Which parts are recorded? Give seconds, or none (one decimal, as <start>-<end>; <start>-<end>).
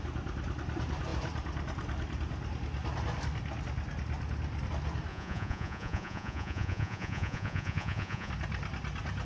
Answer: 0.0-5.1; 8.3-9.2